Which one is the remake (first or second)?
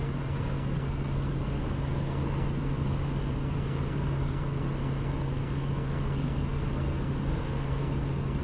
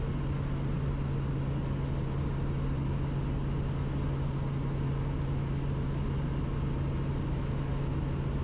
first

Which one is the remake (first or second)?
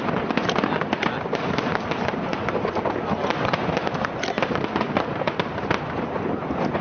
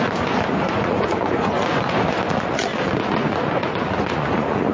second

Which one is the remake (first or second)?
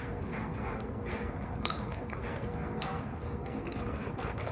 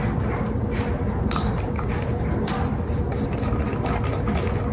first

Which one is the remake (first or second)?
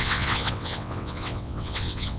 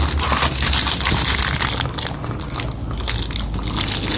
first